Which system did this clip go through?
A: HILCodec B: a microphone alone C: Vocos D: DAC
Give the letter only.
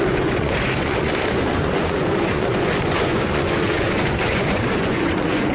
C